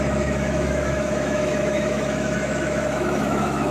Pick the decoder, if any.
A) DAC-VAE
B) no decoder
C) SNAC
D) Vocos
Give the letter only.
A